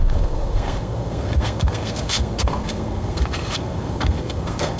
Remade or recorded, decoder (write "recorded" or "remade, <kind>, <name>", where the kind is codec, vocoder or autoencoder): remade, codec, SNAC